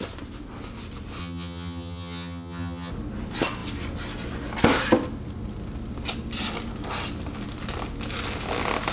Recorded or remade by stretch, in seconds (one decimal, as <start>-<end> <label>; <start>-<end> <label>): 0.0-1.2 recorded; 1.2-2.9 remade; 2.9-8.9 recorded